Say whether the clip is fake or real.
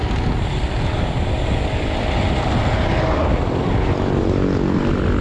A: real